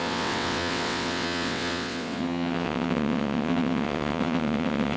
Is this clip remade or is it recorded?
remade